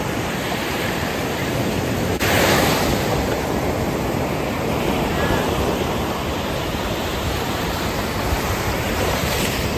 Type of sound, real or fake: fake